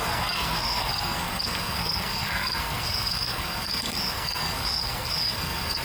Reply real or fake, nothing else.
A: fake